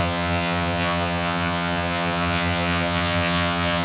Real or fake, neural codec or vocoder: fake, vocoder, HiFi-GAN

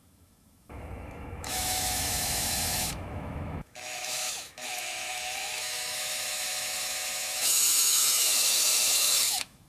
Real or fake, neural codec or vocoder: fake, autoencoder, DAC-VAE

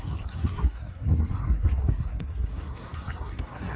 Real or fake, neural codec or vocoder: fake, codec, SNAC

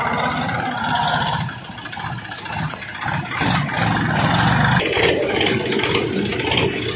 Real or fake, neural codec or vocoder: real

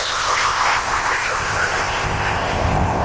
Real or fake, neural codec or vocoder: fake, codec, ZipCodec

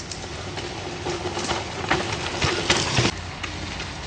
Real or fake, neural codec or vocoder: fake, vocoder, BigVGAN v2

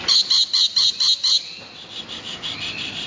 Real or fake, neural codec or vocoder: real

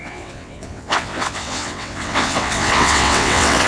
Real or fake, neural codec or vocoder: fake, vocoder, WaveNeXt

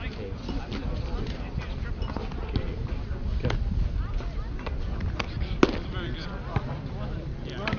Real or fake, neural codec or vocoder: real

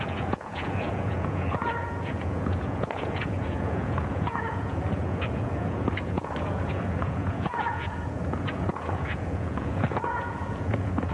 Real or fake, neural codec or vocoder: fake, vocoder, Vocos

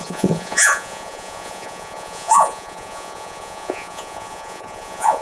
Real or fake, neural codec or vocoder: fake, vocoder, Vocos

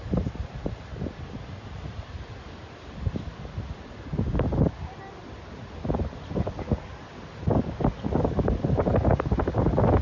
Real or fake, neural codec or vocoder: real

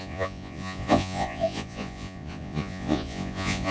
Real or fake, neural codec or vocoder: fake, vocoder, Vocos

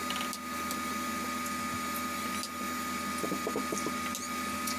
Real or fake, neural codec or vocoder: real